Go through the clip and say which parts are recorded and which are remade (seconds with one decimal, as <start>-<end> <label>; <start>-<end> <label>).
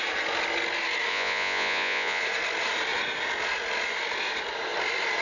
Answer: 0.0-1.1 recorded; 1.1-2.2 remade; 2.2-5.2 recorded